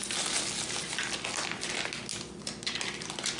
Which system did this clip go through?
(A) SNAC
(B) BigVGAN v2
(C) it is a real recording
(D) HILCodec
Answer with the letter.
C